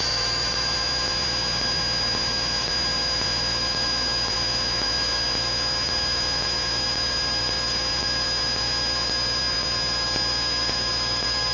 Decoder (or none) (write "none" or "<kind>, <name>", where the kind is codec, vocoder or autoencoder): autoencoder, DAC-VAE